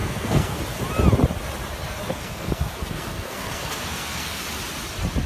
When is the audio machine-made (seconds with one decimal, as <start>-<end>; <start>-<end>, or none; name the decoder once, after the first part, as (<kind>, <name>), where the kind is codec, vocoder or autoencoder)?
0.0-0.6 (codec, SNAC); 2.1-4.4